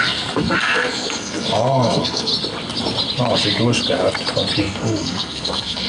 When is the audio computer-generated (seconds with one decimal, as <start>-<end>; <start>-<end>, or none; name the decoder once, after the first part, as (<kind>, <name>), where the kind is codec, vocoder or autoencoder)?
0.0-2.3 (codec, SNAC); 4.6-5.9